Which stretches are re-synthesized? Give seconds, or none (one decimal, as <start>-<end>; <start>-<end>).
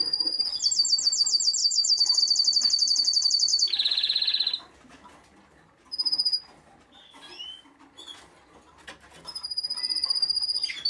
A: 1.6-2.2